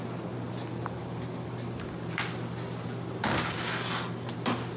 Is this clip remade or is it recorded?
recorded